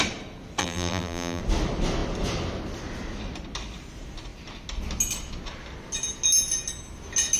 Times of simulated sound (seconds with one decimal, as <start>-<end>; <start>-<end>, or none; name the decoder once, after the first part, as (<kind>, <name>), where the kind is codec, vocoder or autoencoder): 0.6-1.4 (vocoder, BigVGAN v2)

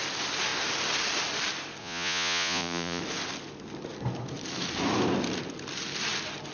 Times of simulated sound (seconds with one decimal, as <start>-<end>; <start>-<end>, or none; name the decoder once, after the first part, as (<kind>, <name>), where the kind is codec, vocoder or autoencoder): 1.8-3.0 (vocoder, Vocos)